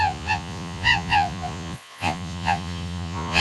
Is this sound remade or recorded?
remade